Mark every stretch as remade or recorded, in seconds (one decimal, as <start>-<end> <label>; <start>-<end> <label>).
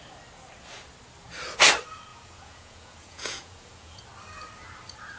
0.0-2.1 recorded; 2.1-4.0 remade; 4.0-5.2 recorded